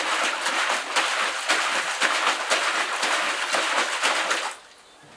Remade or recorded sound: recorded